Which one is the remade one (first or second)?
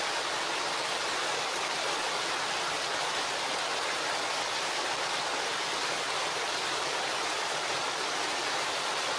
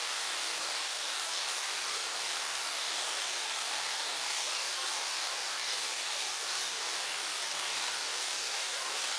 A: second